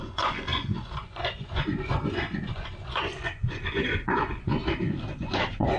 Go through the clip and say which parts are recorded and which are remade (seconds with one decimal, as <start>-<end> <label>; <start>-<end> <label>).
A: 0.0-4.6 remade; 4.6-5.1 recorded; 5.1-5.8 remade